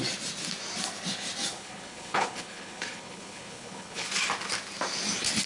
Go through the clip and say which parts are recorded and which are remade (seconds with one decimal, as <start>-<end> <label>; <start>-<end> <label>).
0.0-1.5 recorded; 1.5-4.1 remade; 4.1-5.5 recorded